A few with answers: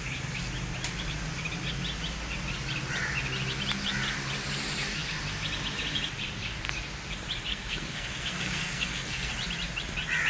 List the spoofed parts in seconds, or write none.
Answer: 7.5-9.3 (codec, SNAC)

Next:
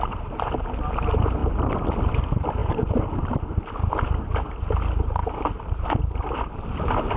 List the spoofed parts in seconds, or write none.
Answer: none